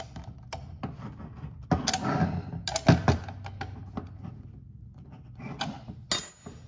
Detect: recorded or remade recorded